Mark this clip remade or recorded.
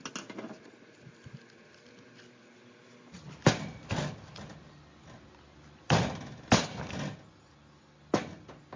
recorded